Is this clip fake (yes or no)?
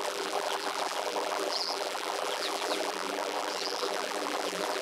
yes